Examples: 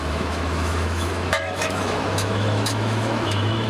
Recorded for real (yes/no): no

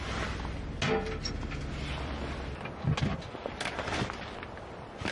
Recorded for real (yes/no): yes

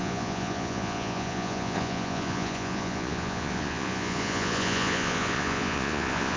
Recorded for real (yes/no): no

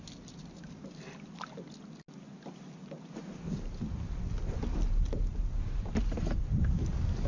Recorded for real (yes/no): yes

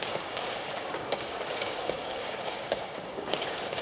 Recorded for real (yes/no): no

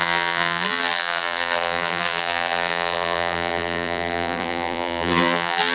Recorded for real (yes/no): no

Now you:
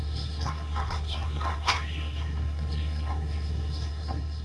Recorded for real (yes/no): no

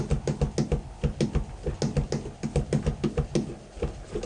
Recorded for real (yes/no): yes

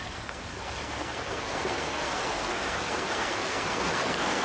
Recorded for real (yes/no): no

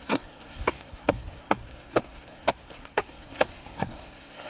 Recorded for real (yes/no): no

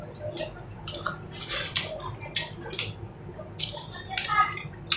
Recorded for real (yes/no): yes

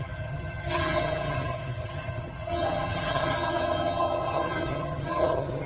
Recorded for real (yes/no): no